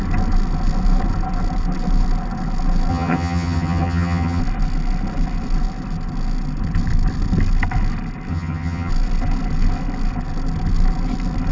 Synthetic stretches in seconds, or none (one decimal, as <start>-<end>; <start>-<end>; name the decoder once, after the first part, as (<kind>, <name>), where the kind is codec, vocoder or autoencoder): 2.9-4.4 (vocoder, HiFi-GAN); 8.3-8.9

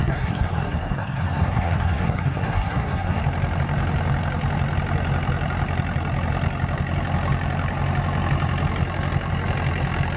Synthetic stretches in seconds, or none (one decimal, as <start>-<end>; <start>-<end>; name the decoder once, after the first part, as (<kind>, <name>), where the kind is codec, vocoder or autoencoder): 0.0-3.2 (codec, SNAC)